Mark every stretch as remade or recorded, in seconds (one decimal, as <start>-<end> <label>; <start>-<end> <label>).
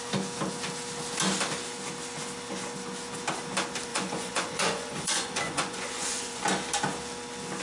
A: 0.0-3.9 recorded; 3.9-6.4 remade; 6.4-7.6 recorded